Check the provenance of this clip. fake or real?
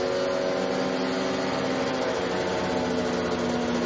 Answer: real